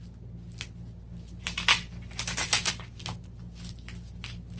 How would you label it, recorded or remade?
recorded